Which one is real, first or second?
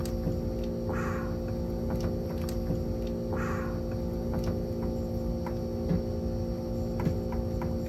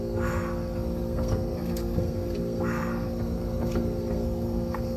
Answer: first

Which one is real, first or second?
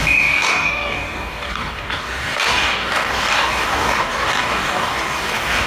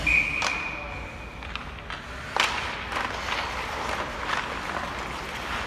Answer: second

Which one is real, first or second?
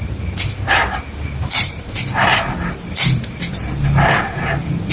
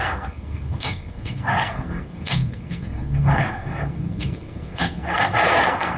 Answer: first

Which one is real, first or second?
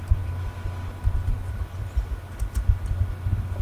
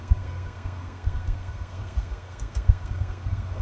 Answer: first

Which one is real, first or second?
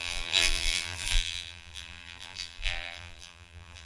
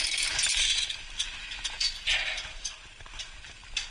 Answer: second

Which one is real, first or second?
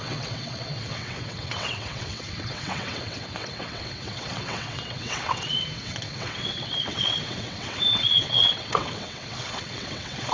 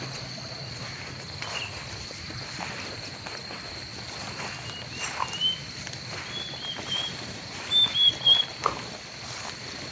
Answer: second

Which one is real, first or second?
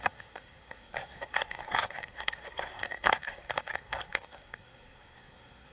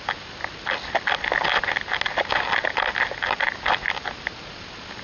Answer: second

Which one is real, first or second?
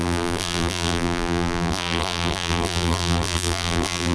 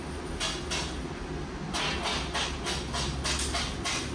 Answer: second